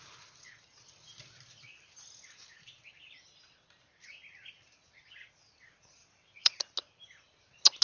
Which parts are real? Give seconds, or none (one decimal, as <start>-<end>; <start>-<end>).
0.0-6.0; 6.6-7.8